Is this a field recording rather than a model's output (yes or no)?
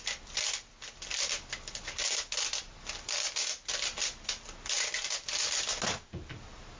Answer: yes